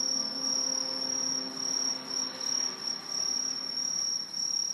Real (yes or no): yes